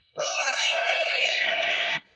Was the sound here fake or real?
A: fake